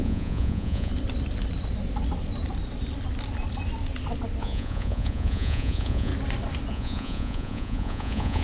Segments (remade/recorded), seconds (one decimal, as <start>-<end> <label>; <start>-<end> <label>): 0.0-0.9 remade; 0.9-4.4 recorded; 4.4-6.1 remade; 6.1-6.7 recorded; 6.7-8.4 remade